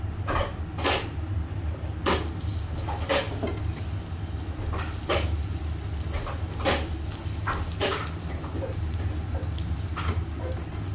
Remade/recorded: recorded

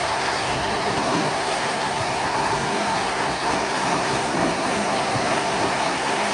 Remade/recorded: remade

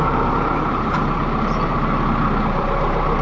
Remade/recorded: remade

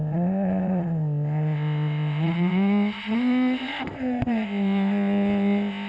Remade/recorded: remade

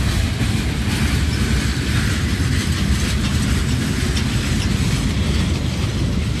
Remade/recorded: recorded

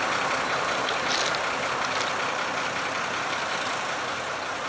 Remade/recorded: recorded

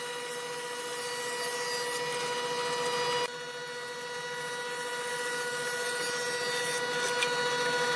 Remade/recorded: recorded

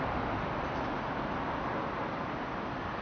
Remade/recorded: recorded